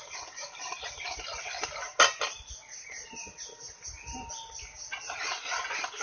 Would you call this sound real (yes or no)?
yes